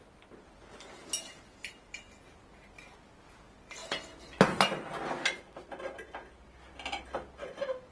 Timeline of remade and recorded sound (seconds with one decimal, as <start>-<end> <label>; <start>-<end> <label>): 0.0-7.9 recorded